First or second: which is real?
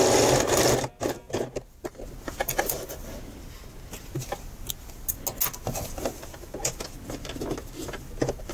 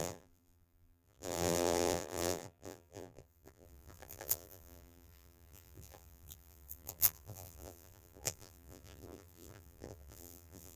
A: first